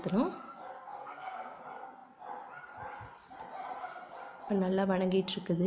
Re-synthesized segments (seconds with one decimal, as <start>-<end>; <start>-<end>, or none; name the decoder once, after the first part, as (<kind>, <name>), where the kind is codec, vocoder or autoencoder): 1.0-1.6 (codec, SNAC)